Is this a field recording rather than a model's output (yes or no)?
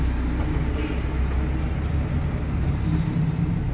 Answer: yes